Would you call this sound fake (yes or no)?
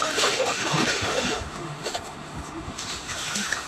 yes